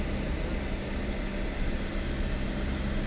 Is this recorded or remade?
recorded